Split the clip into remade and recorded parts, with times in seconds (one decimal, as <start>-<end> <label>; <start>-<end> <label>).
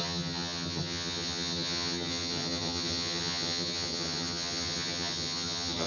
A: 0.0-5.9 remade